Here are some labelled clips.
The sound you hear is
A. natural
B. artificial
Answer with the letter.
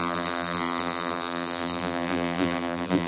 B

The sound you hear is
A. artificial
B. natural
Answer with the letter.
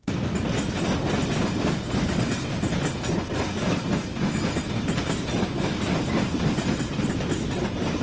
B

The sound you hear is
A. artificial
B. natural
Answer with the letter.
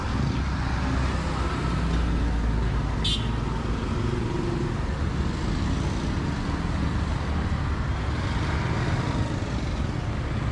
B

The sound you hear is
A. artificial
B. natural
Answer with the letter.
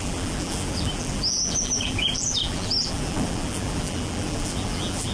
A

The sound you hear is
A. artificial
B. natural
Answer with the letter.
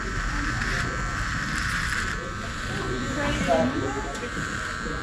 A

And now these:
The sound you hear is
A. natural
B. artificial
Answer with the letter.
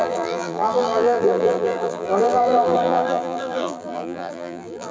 B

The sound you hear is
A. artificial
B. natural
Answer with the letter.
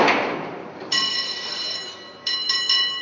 A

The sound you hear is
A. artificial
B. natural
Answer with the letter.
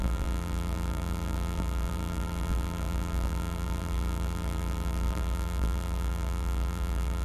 A